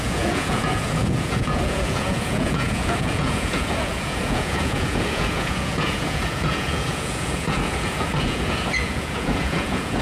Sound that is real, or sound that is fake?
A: fake